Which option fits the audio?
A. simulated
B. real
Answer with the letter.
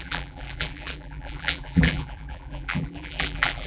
A